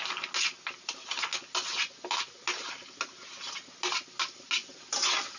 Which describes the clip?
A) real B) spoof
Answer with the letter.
A